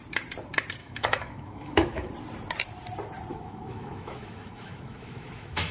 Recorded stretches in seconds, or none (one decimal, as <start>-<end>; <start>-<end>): 0.0-0.8; 2.1-3.3